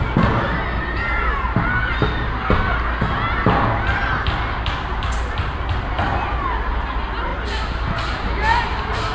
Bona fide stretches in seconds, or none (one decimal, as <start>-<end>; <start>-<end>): 0.0-9.1